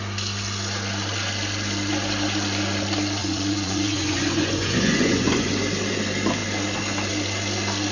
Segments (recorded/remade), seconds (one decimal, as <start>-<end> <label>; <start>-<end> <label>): 0.0-3.2 recorded; 3.2-5.5 remade; 5.5-7.9 recorded